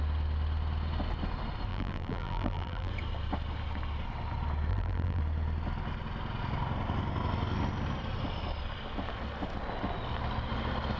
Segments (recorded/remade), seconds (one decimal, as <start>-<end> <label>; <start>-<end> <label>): 0.0-1.7 recorded; 1.7-2.9 remade; 2.9-4.7 recorded; 4.7-5.2 remade; 5.2-11.0 recorded